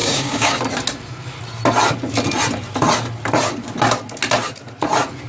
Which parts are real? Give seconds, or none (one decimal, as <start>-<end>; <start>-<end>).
0.6-5.3